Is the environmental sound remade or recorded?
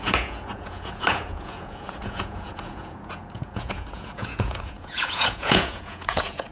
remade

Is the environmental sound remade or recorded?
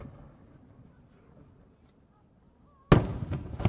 recorded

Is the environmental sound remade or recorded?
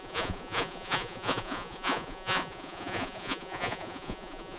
remade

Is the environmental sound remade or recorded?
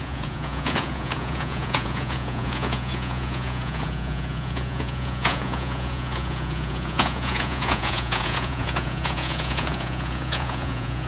remade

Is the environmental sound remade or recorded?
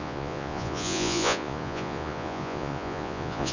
remade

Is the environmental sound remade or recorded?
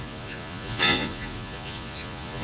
remade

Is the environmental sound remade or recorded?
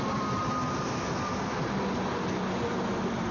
recorded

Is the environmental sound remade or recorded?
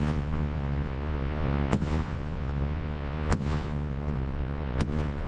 remade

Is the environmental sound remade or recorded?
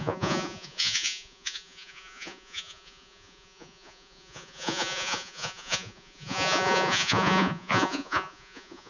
remade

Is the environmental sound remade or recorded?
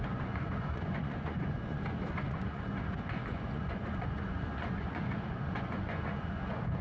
remade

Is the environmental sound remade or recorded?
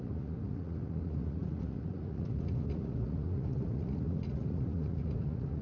remade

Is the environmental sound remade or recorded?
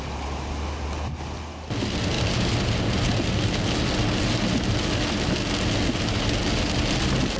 recorded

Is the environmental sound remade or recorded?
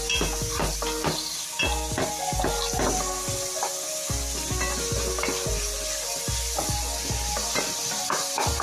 recorded